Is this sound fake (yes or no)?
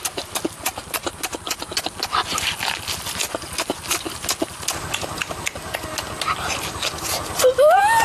no